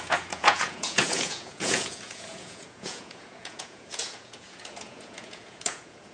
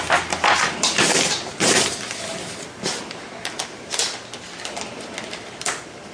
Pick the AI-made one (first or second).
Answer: first